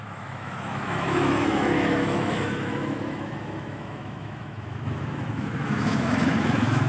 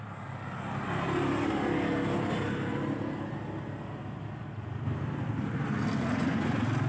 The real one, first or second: second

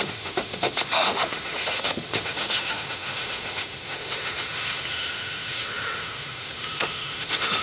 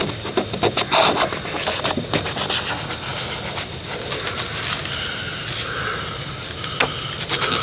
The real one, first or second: second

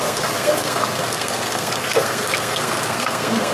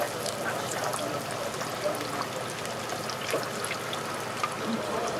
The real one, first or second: second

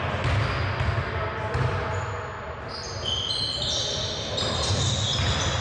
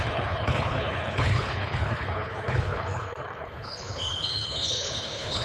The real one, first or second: first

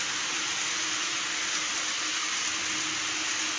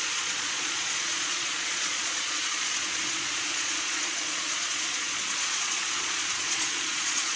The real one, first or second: first